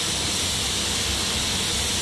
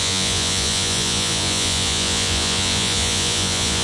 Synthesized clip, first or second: second